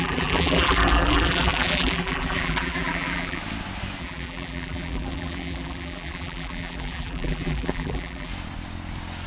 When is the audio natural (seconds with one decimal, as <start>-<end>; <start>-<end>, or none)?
3.4-4.0; 8.3-9.3